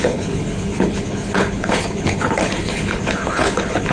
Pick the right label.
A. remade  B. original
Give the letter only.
A